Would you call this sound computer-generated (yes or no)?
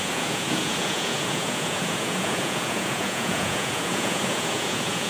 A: yes